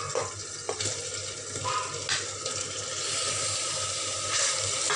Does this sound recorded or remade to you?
recorded